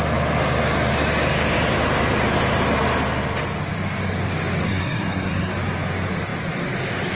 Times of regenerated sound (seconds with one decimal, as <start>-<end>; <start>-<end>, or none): 4.6-5.5